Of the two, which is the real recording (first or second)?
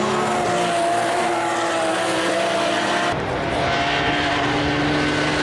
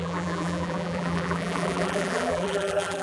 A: first